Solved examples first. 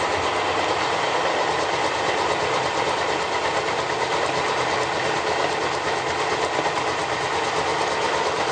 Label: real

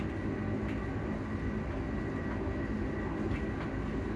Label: real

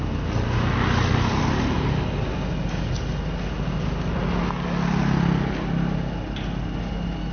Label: real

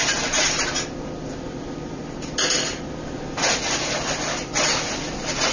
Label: real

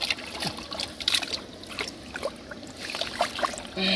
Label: real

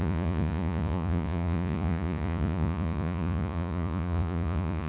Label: fake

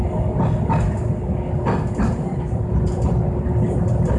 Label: real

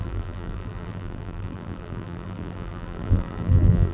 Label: fake